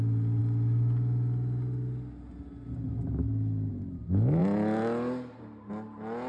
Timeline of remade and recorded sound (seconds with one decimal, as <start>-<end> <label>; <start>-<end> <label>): 0.0-6.3 recorded